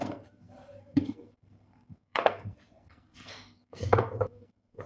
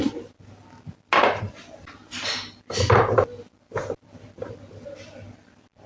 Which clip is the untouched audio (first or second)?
second